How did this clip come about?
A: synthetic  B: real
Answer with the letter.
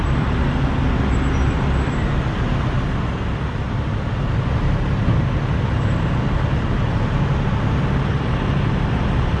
B